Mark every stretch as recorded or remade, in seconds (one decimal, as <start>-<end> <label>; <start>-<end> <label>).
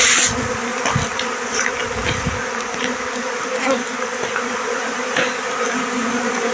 0.0-0.7 recorded; 0.7-2.8 remade; 2.8-6.5 recorded